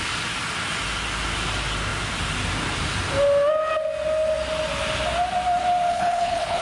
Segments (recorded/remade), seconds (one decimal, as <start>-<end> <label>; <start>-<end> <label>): 0.0-5.9 recorded; 5.9-6.6 remade